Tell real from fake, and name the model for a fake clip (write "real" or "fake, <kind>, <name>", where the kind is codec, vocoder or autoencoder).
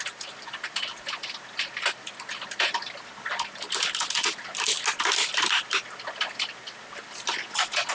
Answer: real